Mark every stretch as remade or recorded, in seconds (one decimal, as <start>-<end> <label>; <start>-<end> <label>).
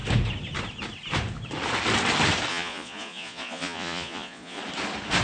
0.0-2.5 recorded; 2.5-4.6 remade; 4.6-5.2 recorded